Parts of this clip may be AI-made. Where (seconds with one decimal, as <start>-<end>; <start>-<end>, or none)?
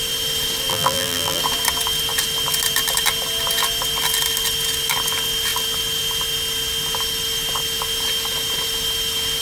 0.7-1.4